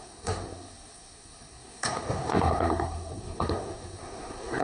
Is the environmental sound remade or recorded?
remade